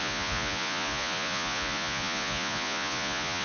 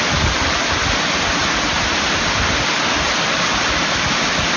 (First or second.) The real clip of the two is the second